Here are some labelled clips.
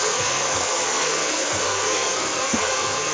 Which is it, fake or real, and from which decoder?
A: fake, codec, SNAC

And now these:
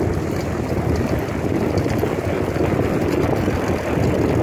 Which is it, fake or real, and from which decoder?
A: real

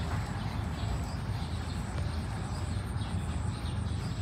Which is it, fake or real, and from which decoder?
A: real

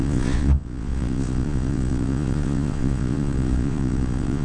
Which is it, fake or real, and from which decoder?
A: fake, vocoder, Vocos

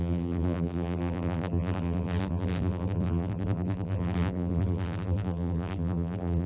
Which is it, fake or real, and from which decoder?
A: fake, vocoder, BigVGAN v2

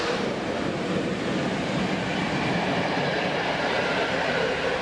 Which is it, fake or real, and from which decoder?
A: fake, vocoder, BigVGAN v2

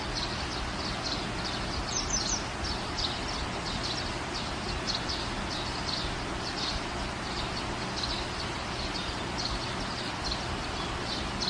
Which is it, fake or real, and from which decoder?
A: real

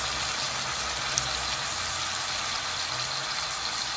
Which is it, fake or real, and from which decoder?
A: real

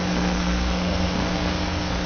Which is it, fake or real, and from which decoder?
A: fake, codec, SNAC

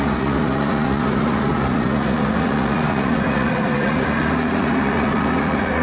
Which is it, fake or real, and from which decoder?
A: fake, vocoder, Vocos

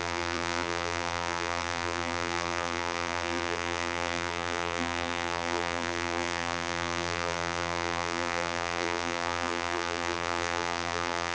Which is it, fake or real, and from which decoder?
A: fake, vocoder, BigVGAN v2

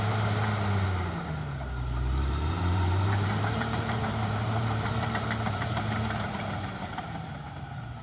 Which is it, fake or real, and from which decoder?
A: fake, vocoder, BigVGAN v2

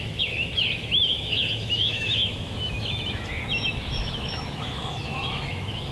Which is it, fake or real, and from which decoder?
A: fake, autoencoder, DAC-VAE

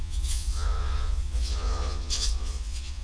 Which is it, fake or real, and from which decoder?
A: fake, vocoder, Vocos